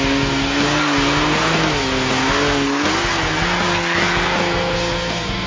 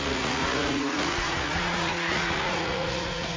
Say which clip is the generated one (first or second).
second